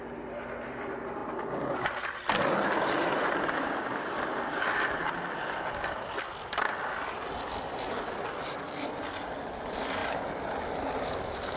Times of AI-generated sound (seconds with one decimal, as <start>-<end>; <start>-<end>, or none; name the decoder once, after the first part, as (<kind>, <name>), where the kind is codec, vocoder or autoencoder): none

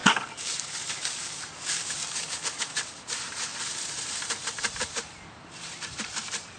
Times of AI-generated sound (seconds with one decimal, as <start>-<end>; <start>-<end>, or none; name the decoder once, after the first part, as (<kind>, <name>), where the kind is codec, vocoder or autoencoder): 0.0-3.0 (codec, DAC)